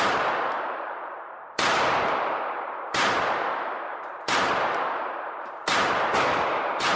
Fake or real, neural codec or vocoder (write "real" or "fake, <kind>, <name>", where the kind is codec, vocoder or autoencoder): fake, vocoder, BigVGAN v2